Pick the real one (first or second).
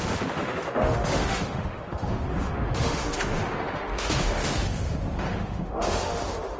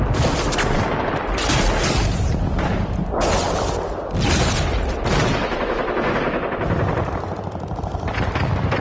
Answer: second